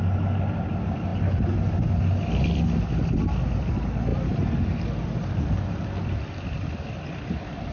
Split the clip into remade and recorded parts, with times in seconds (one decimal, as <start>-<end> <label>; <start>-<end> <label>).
0.0-7.7 recorded